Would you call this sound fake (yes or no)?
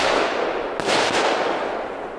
no